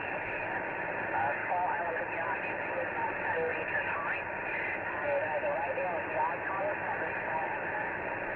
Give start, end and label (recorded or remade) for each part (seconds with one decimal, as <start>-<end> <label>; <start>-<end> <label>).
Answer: 0.0-1.4 recorded; 1.4-2.6 remade; 2.6-3.5 recorded; 3.5-6.1 remade; 6.1-8.4 recorded